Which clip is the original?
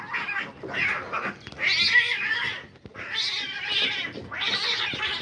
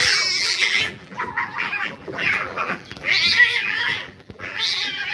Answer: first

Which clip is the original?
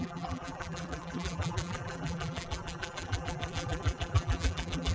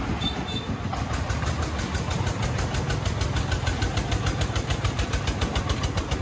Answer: second